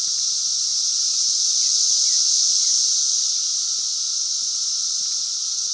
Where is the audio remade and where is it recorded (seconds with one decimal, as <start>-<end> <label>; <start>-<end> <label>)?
0.0-5.7 recorded